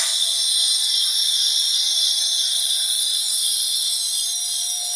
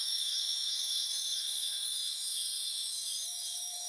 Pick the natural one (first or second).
first